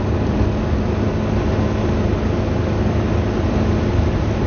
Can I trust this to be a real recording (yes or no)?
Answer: yes